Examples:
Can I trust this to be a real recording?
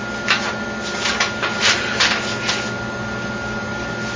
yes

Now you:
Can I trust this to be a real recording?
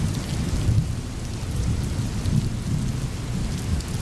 yes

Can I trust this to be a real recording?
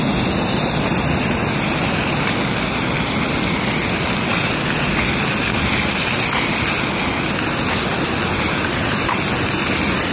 yes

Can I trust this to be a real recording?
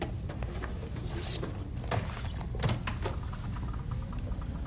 yes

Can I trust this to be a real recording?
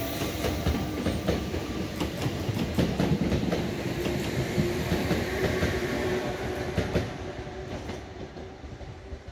no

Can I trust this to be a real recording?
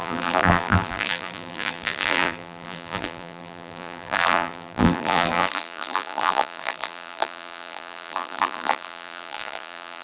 no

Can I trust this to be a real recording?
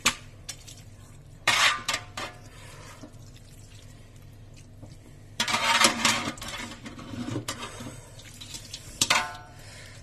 no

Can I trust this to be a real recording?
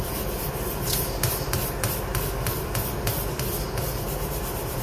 no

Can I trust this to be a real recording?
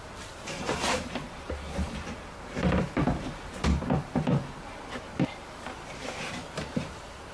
no